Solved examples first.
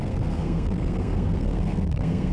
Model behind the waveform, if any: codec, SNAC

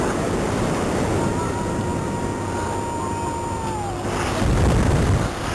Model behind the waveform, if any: none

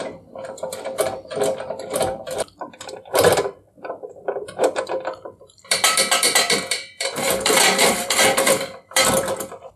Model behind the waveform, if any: vocoder, BigVGAN v2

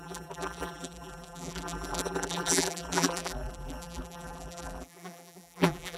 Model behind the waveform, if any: vocoder, BigVGAN v2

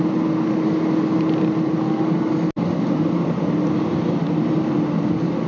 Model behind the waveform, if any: none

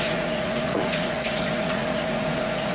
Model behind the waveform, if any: vocoder, Vocos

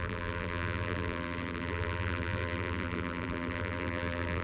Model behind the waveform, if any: vocoder, BigVGAN v2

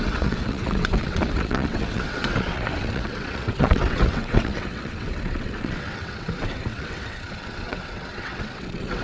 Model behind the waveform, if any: vocoder, WaveNeXt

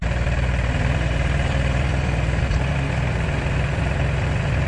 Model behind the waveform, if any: vocoder, BigVGAN v2